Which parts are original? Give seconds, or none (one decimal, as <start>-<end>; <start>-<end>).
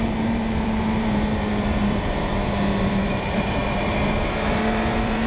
2.3-2.8